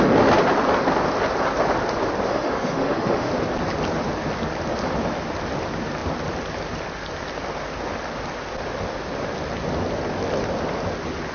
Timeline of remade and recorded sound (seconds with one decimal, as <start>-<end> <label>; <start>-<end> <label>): 0.0-2.3 recorded; 2.3-3.3 remade; 3.3-11.3 recorded